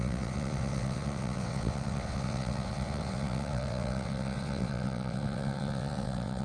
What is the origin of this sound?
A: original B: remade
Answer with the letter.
B